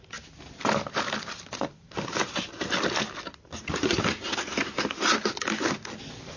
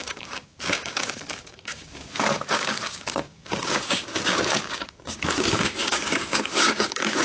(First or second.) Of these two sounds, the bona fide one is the first